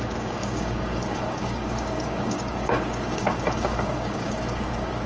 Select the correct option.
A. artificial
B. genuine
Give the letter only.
A